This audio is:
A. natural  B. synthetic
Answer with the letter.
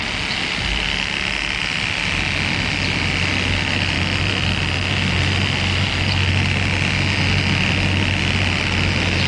A